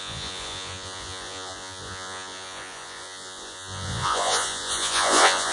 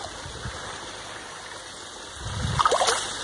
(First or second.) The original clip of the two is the second